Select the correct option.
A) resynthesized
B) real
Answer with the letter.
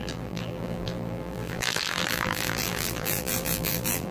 A